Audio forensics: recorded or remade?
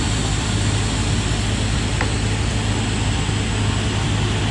remade